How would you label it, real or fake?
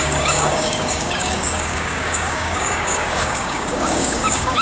fake